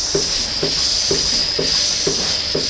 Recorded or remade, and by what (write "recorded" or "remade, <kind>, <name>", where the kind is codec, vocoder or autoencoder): recorded